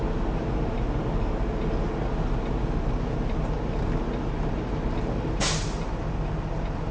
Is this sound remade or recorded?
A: recorded